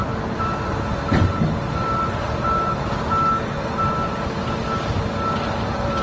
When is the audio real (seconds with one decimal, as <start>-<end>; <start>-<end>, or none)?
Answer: 0.0-6.0